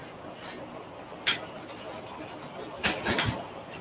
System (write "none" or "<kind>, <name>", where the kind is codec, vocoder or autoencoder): none